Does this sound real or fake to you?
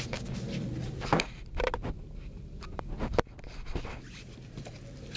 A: real